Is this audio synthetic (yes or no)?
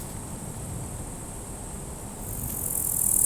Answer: no